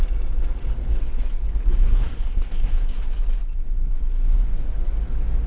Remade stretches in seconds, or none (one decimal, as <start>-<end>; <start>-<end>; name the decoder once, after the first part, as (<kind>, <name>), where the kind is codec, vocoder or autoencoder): 1.8-3.0 (codec, SNAC)

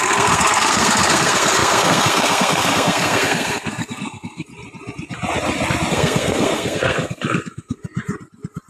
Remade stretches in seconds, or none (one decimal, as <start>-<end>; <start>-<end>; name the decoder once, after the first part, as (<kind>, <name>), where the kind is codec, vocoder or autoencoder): 0.0-4.5 (codec, SNAC); 5.9-7.8

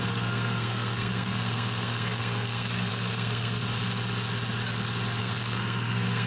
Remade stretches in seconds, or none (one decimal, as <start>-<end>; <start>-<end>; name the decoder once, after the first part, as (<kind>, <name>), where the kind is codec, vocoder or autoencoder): 0.0-3.6 (codec, SNAC); 5.2-6.3

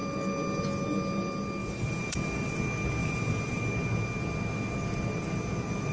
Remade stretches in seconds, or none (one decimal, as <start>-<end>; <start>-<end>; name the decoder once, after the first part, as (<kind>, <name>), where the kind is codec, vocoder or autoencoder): 1.6-2.5 (vocoder, BigVGAN v2); 3.0-3.6

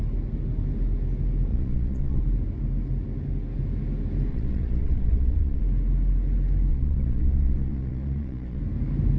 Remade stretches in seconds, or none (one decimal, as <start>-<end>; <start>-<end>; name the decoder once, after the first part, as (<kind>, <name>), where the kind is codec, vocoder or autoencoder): 1.5-2.2 (vocoder, Vocos); 4.3-5.6; 6.7-8.6

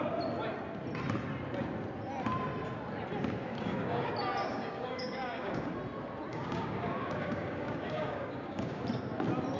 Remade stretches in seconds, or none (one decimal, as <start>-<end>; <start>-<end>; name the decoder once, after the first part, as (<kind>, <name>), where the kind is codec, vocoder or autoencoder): 3.4-4.1 (codec, DAC); 4.5-5.7; 6.3-8.8

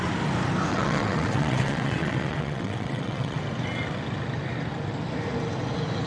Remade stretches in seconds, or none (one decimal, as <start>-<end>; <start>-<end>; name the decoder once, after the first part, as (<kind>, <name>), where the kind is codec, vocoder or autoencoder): 0.7-3.4 (vocoder, WaveNeXt)